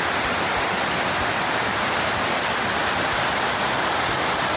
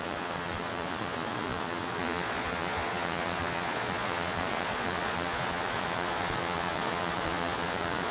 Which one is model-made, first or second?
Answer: second